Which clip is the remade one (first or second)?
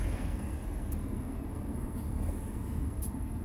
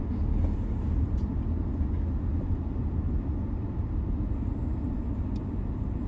first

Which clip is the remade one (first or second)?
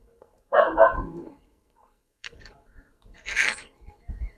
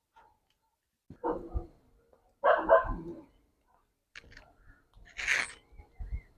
first